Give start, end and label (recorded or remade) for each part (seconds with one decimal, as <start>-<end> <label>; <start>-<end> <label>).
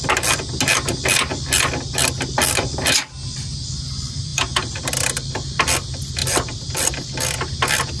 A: 0.0-4.3 recorded; 4.3-4.8 remade; 4.8-6.2 recorded; 6.2-7.1 remade; 7.1-8.0 recorded